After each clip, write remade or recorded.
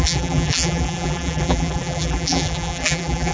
remade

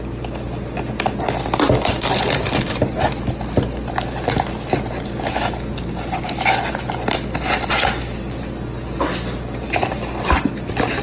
recorded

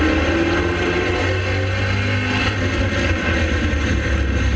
recorded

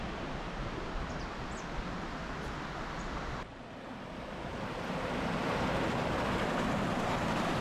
recorded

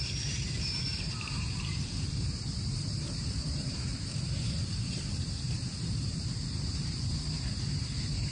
remade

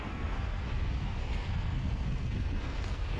remade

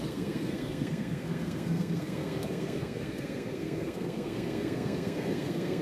remade